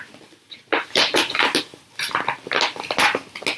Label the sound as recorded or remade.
recorded